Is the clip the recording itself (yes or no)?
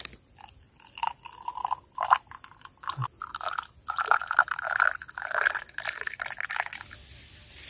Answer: yes